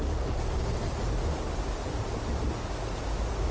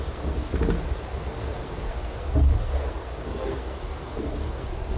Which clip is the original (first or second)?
first